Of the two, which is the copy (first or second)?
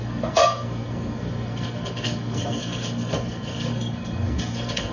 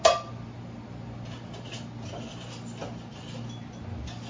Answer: first